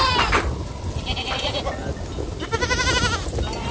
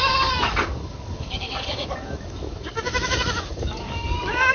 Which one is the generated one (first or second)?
second